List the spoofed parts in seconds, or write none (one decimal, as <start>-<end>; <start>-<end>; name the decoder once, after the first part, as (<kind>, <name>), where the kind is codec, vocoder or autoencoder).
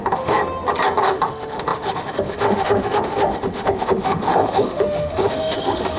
0.0-0.4 (autoencoder, DAC-VAE); 1.0-6.0